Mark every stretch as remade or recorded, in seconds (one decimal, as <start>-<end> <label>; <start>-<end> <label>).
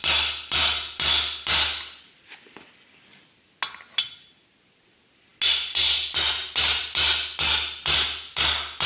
0.0-8.9 recorded